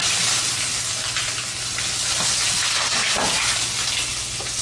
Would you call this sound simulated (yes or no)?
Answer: no